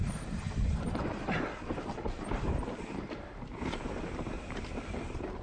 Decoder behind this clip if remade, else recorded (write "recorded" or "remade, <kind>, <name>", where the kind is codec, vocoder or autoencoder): remade, vocoder, BigVGAN v2